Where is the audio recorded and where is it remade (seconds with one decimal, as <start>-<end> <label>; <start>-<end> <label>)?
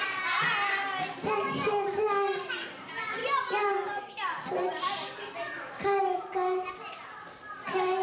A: 0.0-8.0 recorded